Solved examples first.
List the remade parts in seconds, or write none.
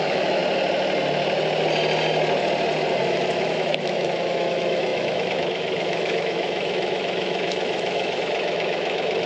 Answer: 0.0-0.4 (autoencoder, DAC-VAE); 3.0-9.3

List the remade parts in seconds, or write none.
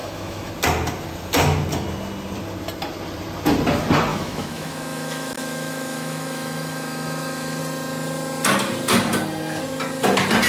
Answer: 0.0-0.5 (autoencoder, DAC-VAE); 4.1-7.6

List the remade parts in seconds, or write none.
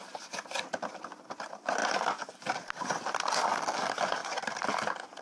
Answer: none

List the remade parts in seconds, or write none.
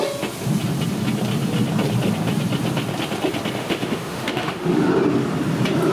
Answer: 3.6-4.9 (autoencoder, DAC-VAE)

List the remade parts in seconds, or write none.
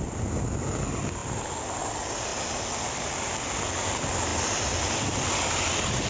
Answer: none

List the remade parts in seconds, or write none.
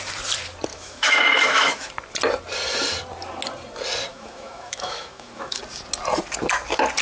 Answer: 0.7-1.9 (autoencoder, DAC-VAE); 4.1-5.6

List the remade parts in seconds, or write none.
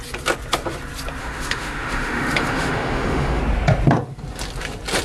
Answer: 1.2-3.4 (autoencoder, DAC-VAE)